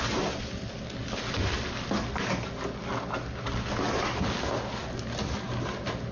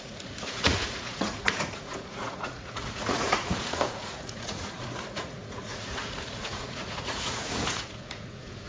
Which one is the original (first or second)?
first